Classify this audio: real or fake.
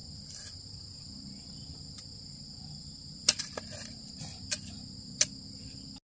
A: real